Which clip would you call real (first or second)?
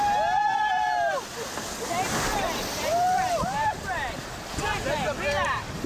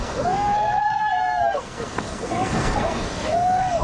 first